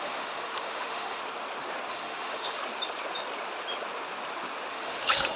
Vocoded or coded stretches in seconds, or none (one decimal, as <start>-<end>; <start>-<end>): 0.0-1.2; 1.9-2.6; 4.7-5.4